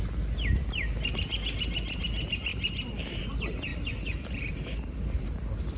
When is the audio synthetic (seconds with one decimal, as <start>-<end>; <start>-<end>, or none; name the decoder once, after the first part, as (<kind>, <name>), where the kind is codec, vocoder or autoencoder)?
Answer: 2.5-3.2 (vocoder, BigVGAN v2); 3.7-5.3